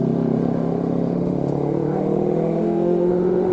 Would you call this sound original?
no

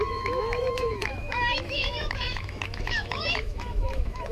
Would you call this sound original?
no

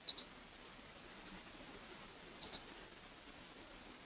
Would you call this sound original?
yes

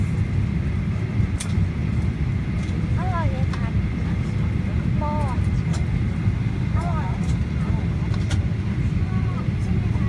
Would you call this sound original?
yes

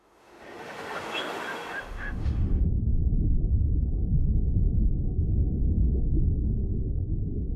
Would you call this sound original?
no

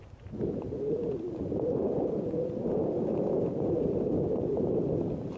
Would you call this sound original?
yes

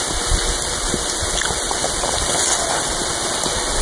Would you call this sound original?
yes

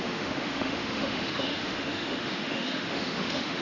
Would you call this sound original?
no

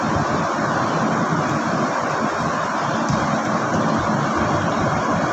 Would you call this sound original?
yes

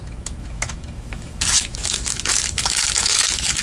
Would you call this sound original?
no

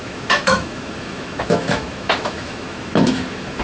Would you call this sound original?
no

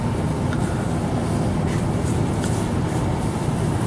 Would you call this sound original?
yes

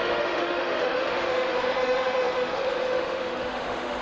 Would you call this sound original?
no